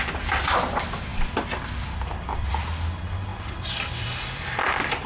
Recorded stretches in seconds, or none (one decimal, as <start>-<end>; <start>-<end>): 0.0-1.1; 2.5-3.3